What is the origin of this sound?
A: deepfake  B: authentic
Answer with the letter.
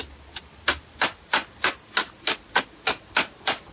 B